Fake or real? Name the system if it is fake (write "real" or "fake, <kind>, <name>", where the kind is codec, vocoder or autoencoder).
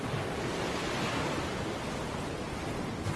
real